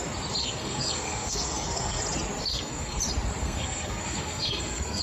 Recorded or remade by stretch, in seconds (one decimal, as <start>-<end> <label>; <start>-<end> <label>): 0.0-0.4 recorded; 0.4-2.0 remade; 2.0-2.5 recorded; 2.5-3.0 remade; 3.0-3.4 recorded; 3.4-5.0 remade